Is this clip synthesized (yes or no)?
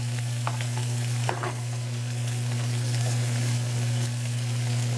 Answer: yes